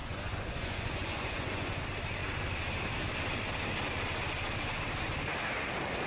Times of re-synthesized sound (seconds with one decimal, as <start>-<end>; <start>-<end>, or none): 0.0-1.8

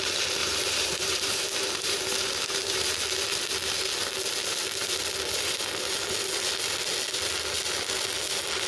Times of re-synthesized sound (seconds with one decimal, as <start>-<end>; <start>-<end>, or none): 0.4-3.0